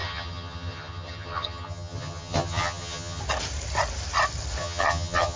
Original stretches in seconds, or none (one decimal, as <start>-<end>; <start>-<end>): 3.2-4.6